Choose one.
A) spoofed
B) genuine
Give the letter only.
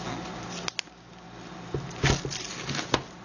B